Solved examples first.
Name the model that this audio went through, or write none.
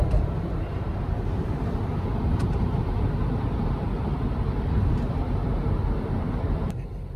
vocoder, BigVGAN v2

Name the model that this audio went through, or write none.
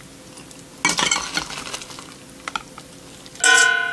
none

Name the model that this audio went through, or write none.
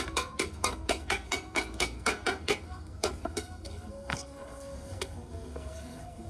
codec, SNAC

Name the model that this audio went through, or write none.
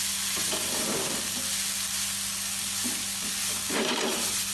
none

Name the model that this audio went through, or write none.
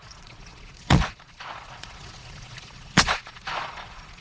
vocoder, Vocos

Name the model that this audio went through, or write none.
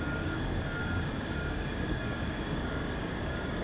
codec, DAC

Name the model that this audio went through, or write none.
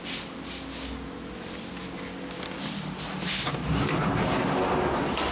none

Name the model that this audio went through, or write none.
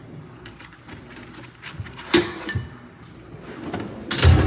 none